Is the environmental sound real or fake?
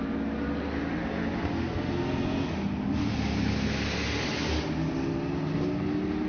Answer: real